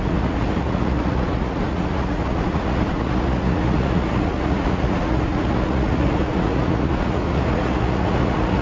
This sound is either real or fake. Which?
fake